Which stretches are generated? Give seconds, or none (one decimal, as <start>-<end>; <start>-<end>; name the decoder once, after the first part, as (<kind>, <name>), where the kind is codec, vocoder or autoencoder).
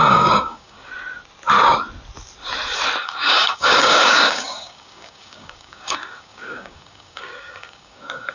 0.0-0.9 (codec, DAC); 3.0-8.3